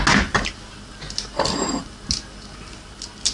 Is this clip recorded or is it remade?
recorded